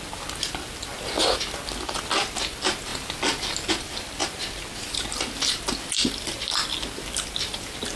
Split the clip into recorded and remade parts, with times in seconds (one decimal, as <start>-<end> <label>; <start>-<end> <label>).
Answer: 0.0-8.0 recorded

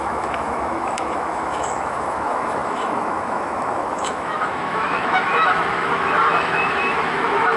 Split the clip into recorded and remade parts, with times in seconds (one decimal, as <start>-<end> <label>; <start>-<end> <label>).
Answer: 0.0-7.6 remade

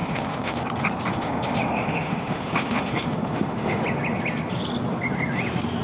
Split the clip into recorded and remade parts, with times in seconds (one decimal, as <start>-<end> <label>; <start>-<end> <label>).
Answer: 0.0-0.6 remade; 0.6-1.1 recorded; 1.1-3.8 remade; 3.8-5.8 recorded

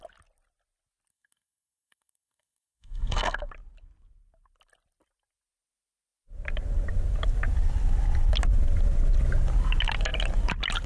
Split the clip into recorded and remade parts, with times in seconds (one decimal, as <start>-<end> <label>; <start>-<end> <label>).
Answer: 0.0-1.1 recorded; 1.1-3.5 remade; 3.5-10.9 recorded

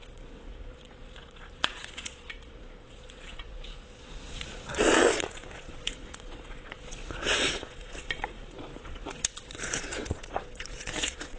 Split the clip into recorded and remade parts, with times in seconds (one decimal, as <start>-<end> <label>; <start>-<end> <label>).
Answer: 0.0-11.4 remade